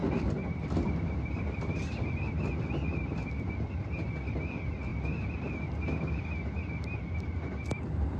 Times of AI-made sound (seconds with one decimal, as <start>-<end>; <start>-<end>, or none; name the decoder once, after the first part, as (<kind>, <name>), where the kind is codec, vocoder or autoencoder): 0.0-2.1 (vocoder, BigVGAN v2)

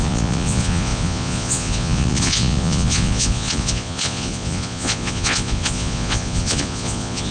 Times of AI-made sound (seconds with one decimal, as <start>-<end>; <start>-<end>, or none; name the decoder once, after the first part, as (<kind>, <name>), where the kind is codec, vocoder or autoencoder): 0.0-7.3 (vocoder, Vocos)

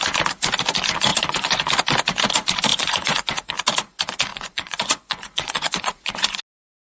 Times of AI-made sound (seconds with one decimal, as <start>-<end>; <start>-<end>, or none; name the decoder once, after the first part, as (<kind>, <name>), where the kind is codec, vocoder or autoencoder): 1.1-1.6 (vocoder, Vocos); 2.7-3.5; 4.3-6.4

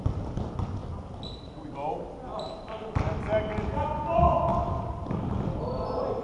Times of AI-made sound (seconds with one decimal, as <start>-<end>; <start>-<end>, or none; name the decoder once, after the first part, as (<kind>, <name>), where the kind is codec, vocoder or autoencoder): none